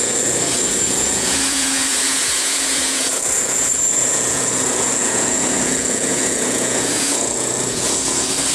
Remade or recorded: remade